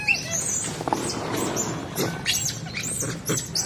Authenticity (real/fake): real